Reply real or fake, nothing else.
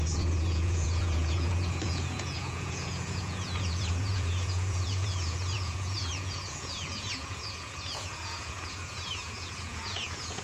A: fake